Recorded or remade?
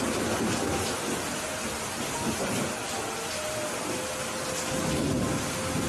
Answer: recorded